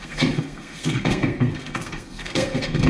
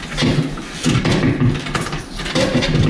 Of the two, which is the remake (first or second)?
first